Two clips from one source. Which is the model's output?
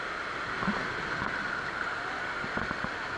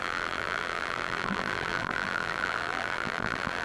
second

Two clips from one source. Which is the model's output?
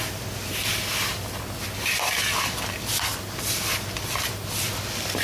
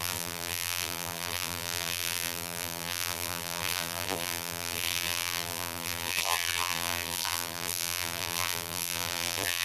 second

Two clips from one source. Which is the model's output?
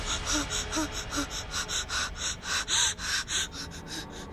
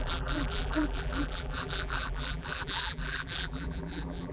second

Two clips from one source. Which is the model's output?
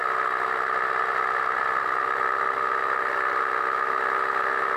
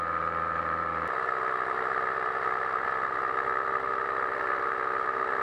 second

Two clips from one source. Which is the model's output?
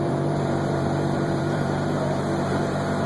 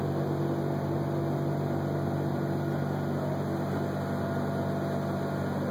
first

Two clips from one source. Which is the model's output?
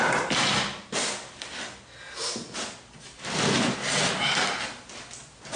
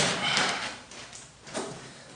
second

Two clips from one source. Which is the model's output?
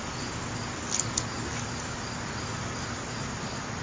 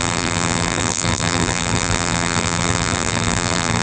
second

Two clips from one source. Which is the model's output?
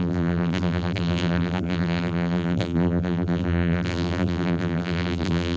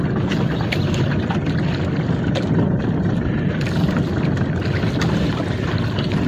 first